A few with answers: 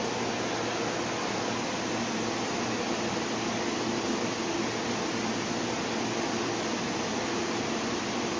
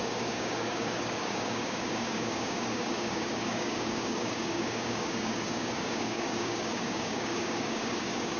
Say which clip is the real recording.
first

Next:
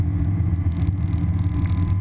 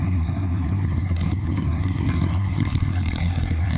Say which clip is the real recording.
first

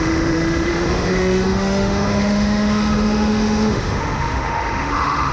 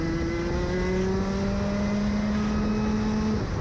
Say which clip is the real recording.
second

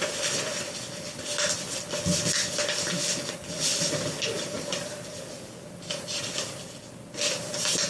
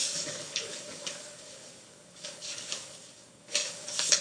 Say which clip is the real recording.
first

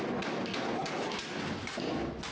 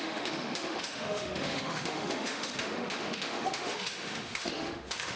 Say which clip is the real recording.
first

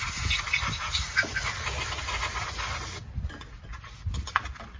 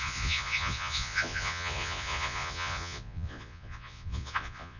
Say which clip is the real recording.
first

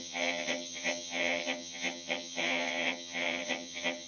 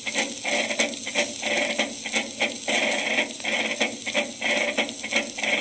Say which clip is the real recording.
second